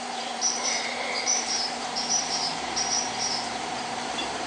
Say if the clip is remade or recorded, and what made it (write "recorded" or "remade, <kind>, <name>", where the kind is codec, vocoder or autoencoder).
remade, vocoder, BigVGAN v2